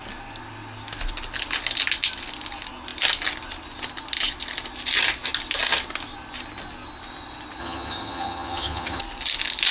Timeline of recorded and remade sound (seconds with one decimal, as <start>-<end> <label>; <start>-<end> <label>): 0.0-7.6 recorded; 7.6-9.0 remade; 9.0-9.7 recorded